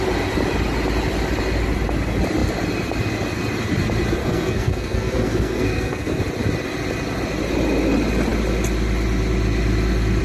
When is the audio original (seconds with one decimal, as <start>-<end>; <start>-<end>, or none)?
0.0-4.2; 6.2-10.2

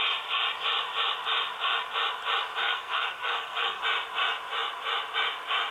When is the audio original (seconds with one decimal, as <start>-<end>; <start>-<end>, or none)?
0.0-2.6; 3.8-5.7